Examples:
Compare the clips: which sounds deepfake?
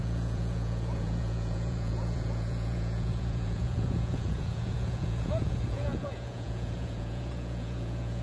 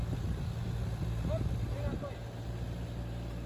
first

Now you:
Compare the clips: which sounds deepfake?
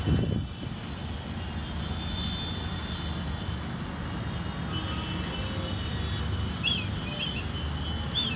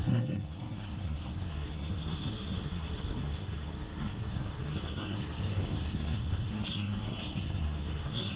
second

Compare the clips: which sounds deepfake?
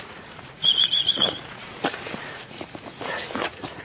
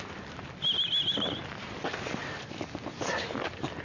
first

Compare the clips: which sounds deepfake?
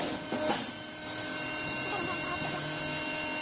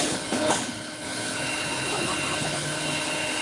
second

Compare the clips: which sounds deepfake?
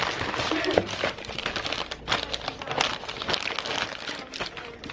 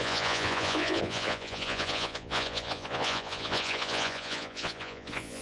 second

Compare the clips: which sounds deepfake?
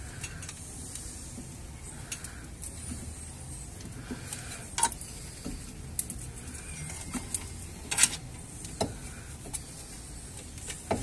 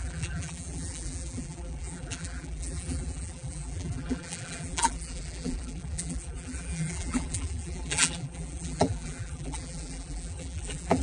second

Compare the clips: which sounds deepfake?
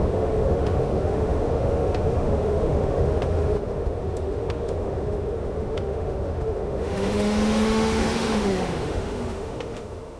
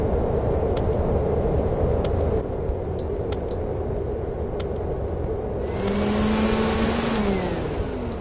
first